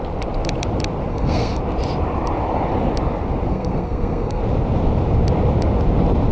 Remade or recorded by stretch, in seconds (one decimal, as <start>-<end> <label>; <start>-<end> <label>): 0.0-1.1 recorded; 1.1-1.6 remade; 1.6-3.5 recorded; 3.5-4.4 remade; 4.4-6.3 recorded